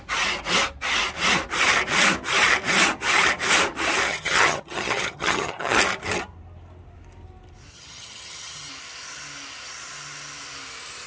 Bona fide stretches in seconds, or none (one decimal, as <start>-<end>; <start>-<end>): 0.0-4.1; 5.8-7.7; 8.7-11.1